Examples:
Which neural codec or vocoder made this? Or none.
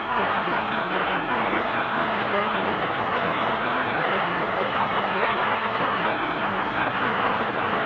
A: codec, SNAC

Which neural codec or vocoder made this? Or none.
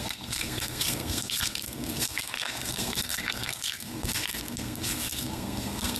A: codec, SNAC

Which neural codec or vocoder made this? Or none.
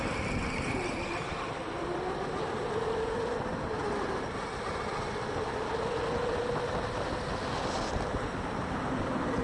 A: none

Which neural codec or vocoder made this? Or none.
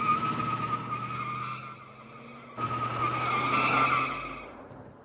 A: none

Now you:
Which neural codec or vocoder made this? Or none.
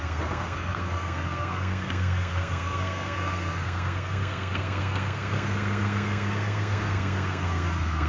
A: codec, SNAC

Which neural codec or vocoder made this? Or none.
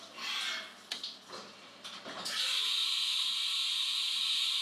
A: none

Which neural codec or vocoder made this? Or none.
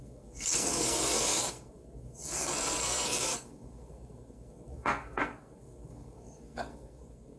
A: codec, SNAC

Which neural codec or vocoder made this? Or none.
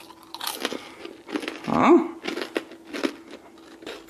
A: none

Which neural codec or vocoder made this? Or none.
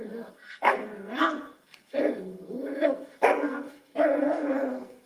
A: codec, SNAC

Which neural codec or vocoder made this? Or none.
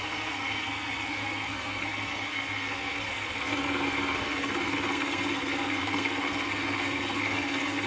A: codec, SNAC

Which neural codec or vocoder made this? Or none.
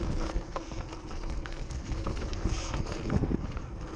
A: codec, SNAC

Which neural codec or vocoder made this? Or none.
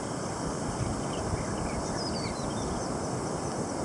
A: none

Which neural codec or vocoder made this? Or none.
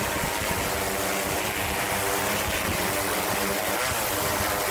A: none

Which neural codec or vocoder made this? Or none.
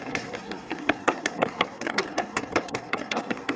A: codec, SNAC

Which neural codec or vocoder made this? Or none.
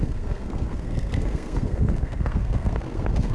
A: codec, SNAC